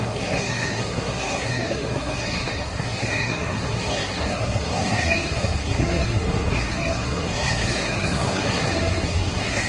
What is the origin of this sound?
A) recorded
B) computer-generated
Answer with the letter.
B